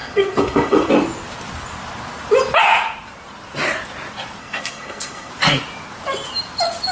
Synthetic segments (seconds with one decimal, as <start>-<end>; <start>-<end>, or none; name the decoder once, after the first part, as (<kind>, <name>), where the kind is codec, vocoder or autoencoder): 0.0-0.9 (codec, SNAC); 4.4-5.3

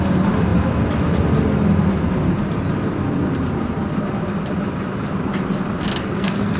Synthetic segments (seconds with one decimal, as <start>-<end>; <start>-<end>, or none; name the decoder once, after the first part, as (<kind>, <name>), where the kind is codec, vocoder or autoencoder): 6.0-6.6 (codec, SNAC)

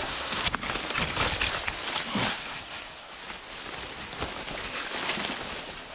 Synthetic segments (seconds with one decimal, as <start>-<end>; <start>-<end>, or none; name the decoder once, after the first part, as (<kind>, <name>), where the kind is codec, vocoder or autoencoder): 0.0-0.4 (codec, SNAC); 2.3-3.1

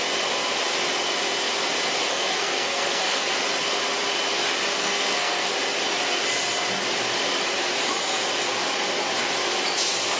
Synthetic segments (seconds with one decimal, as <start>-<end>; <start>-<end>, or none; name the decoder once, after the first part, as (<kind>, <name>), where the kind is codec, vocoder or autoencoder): 2.1-3.3 (codec, SNAC); 4.8-5.5

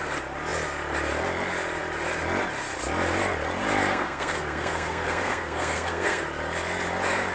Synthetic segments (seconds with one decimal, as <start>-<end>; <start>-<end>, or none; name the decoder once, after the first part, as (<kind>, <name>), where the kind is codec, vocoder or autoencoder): 3.8-6.2 (codec, SNAC)